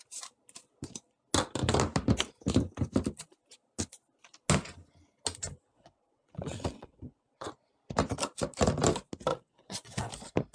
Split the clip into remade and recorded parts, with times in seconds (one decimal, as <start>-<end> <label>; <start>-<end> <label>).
0.0-5.7 recorded; 5.7-7.5 remade; 7.5-9.3 recorded; 9.3-10.1 remade; 10.1-10.5 recorded